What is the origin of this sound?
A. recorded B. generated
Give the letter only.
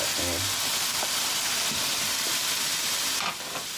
A